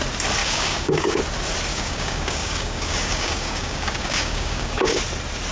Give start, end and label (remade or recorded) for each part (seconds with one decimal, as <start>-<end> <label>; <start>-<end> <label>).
0.0-0.4 recorded; 0.4-1.2 remade; 1.2-1.7 recorded; 1.7-5.0 remade; 5.0-5.5 recorded